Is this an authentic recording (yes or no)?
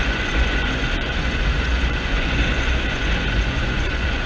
no